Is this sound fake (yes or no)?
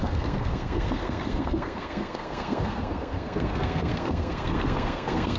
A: yes